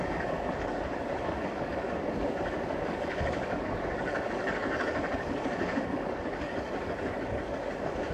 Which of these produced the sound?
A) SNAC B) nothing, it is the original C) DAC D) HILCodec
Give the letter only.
C